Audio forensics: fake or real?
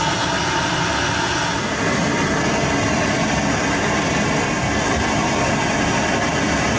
real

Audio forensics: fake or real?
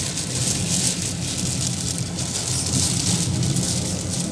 real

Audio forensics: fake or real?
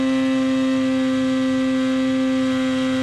real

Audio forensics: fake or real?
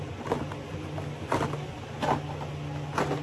real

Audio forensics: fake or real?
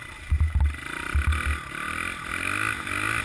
real